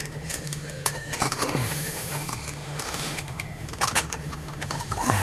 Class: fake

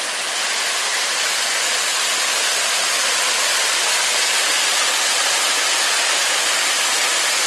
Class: real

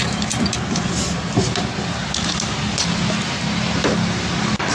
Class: real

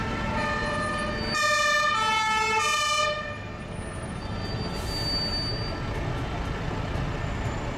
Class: real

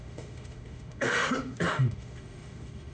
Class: fake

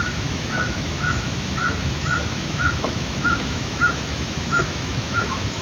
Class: fake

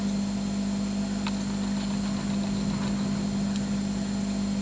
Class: real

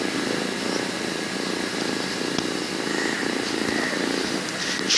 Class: real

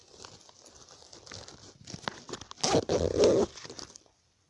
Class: real